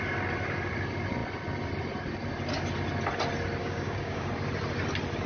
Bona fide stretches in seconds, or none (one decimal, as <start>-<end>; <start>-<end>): 0.0-3.6; 4.3-5.3

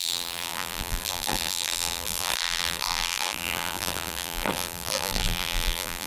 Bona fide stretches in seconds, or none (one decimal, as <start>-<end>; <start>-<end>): none